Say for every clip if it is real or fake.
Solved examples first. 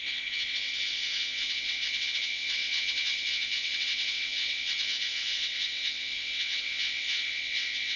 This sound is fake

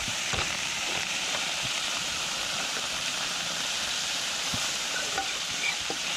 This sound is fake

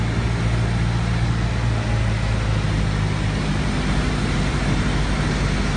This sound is real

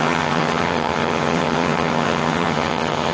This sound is fake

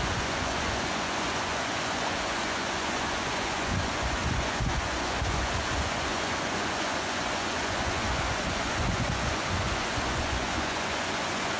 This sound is fake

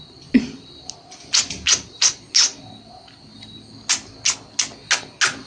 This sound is real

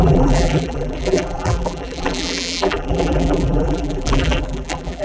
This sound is fake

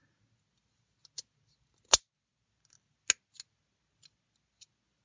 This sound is real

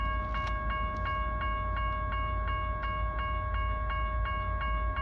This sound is real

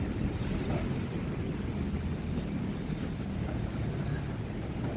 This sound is real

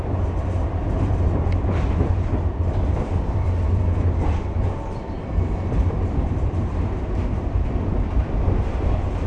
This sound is fake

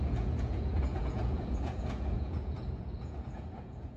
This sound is fake